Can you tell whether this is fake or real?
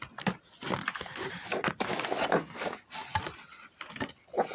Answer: real